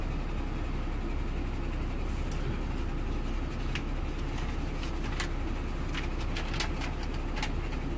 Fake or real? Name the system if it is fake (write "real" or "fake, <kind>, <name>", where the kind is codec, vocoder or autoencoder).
real